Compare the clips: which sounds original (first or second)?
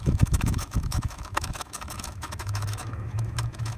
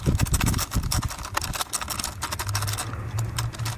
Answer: second